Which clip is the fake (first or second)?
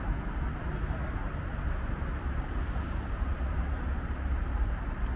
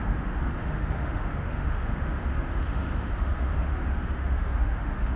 second